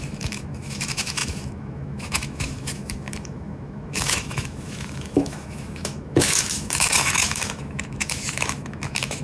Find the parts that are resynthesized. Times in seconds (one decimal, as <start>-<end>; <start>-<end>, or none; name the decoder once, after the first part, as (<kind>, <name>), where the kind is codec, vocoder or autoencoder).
0.0-9.2 (autoencoder, DAC-VAE)